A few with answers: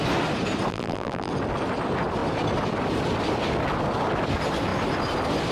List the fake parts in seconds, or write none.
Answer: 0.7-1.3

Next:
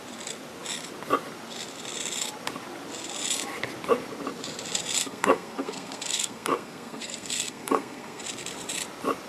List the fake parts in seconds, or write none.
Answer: 5.0-8.2

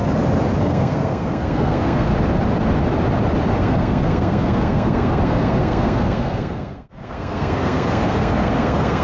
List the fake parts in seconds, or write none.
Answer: 0.6-2.1; 3.6-9.0